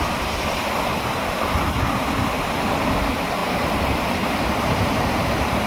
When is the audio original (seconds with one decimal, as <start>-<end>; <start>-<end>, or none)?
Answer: 0.0-3.4